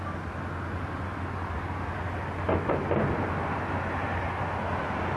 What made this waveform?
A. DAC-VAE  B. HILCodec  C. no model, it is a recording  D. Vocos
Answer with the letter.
C